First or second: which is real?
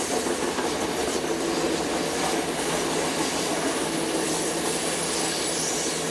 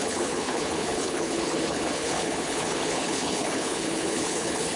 first